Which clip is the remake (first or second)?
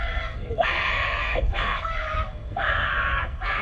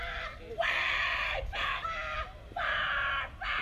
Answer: first